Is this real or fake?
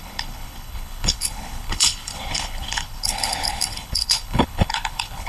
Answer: fake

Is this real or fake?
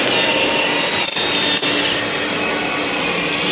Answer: real